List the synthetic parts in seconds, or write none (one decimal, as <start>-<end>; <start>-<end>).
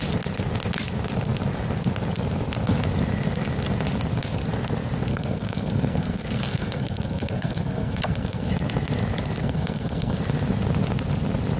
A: 5.1-8.5; 9.4-10.2